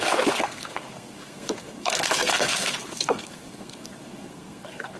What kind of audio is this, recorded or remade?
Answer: remade